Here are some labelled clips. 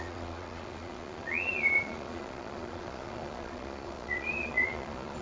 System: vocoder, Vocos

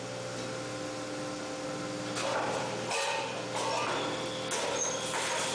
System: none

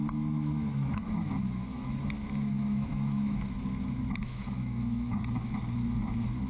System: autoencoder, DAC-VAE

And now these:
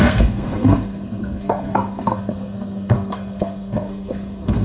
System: codec, SNAC